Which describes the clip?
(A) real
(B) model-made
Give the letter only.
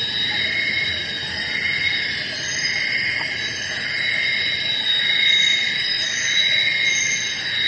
A